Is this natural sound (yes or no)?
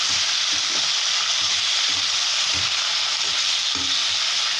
yes